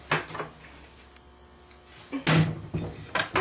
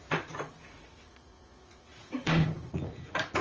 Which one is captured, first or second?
first